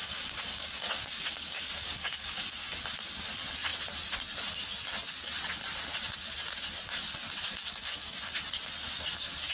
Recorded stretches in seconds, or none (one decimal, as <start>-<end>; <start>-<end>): 0.0-0.5; 2.4-7.6; 8.2-9.5